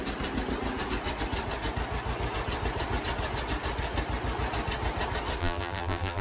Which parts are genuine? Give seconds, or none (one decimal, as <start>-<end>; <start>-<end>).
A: 0.0-5.4